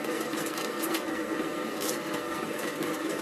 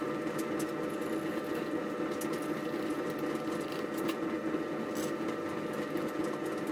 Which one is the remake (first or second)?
first